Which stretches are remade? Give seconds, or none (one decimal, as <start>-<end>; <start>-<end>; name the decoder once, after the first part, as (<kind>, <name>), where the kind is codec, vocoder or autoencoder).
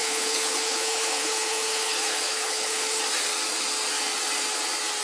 0.0-3.0 (codec, HILCodec)